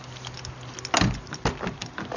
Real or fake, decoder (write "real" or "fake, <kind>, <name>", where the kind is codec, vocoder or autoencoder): real